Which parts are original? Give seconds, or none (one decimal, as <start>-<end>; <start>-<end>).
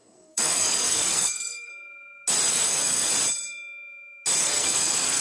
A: 1.7-2.5; 3.1-4.4